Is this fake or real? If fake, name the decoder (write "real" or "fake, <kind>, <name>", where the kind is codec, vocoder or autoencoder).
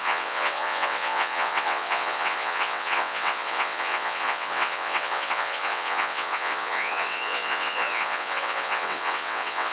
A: fake, vocoder, WaveNeXt